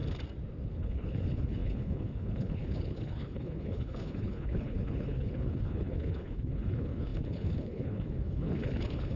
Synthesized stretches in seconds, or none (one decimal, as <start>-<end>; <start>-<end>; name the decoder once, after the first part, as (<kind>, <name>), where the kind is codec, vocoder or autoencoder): 0.7-9.2 (codec, HILCodec)